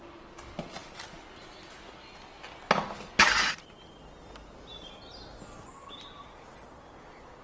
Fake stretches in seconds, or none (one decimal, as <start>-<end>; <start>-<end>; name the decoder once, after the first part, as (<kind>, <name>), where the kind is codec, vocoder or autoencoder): none